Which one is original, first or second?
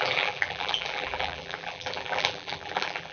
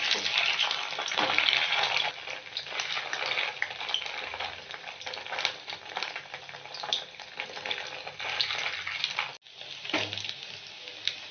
second